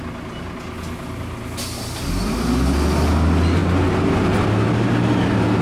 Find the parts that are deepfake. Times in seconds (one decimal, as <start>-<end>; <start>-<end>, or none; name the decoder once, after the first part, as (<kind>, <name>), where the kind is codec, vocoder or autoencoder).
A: none